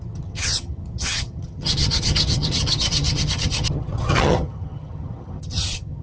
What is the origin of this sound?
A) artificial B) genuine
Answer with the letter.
A